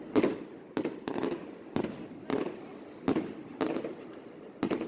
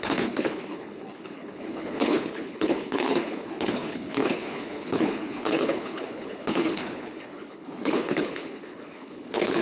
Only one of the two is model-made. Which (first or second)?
second